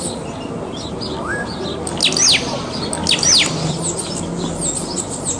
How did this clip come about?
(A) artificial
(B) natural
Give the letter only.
B